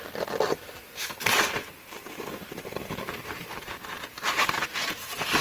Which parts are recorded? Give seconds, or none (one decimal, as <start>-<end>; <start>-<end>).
0.0-2.0